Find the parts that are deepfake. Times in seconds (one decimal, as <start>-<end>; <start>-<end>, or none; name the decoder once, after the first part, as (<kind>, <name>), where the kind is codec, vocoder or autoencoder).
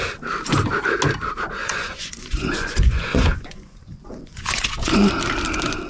1.6-5.1 (vocoder, Vocos)